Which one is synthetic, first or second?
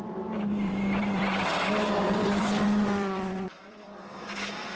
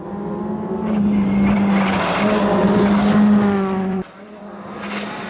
first